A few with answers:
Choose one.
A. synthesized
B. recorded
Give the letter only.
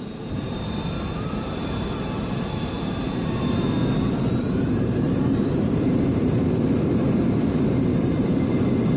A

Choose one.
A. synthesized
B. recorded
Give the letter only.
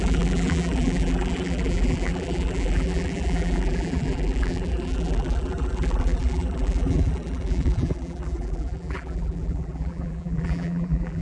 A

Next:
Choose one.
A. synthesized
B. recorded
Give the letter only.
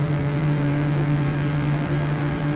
A